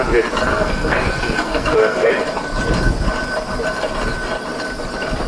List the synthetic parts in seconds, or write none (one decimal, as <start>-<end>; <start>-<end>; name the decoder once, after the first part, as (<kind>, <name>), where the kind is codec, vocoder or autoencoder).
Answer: 0.5-2.1 (codec, SNAC)